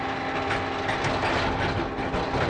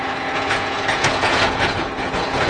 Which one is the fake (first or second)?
second